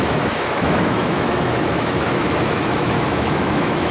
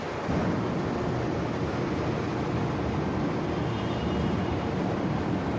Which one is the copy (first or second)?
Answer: first